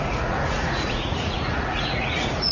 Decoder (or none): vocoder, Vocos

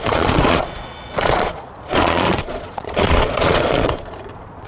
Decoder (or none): vocoder, Vocos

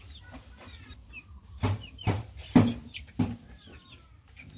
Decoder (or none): none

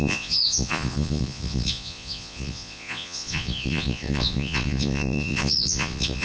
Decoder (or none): vocoder, Vocos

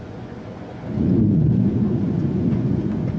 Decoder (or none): vocoder, Vocos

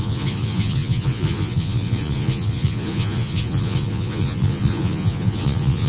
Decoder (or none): vocoder, Vocos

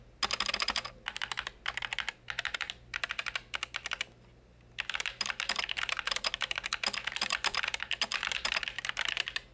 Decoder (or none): none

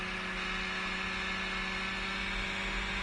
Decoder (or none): none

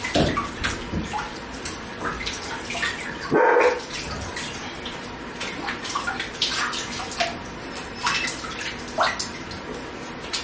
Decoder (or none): none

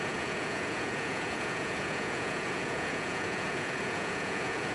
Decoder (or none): vocoder, Vocos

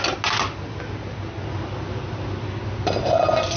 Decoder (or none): none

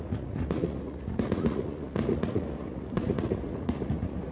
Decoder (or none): vocoder, Vocos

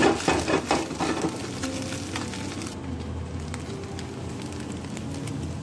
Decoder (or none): none